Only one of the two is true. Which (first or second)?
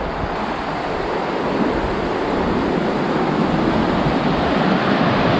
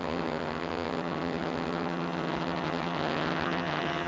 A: first